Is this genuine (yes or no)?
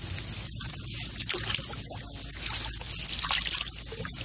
yes